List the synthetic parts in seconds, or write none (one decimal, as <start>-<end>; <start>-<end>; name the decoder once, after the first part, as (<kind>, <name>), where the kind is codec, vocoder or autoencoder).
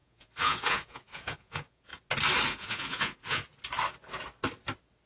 0.0-1.9 (vocoder, Vocos); 2.5-3.5